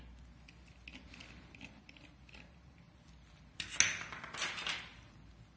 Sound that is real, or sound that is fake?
real